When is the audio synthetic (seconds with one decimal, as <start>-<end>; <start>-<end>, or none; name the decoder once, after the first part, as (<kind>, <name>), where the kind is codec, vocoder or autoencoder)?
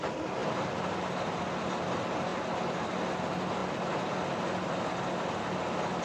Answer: none